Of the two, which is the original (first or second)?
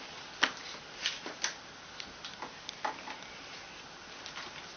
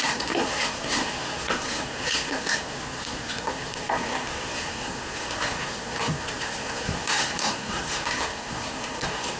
first